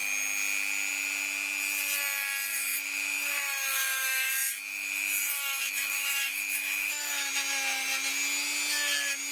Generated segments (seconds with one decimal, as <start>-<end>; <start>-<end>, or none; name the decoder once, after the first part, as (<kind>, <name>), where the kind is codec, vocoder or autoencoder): 2.5-7.3 (autoencoder, DAC-VAE)